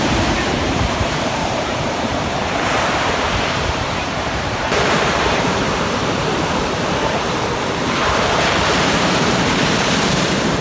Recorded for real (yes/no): no